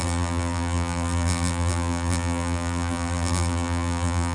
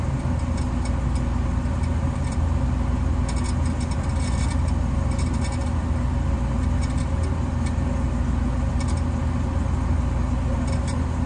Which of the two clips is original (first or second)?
second